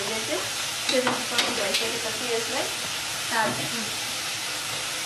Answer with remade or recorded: recorded